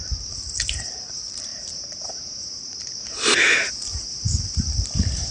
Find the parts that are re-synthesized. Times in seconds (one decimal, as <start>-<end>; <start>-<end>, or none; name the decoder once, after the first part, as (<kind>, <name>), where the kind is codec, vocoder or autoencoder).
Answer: 0.0-5.3 (vocoder, BigVGAN v2)